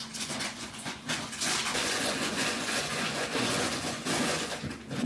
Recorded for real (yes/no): no